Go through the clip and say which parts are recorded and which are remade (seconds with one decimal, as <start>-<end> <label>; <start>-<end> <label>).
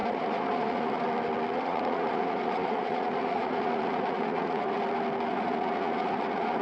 0.0-1.0 remade; 1.0-1.5 recorded; 1.5-4.8 remade; 4.8-5.3 recorded; 5.3-6.6 remade